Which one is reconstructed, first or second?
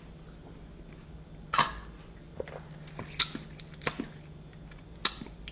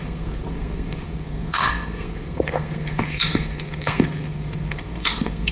second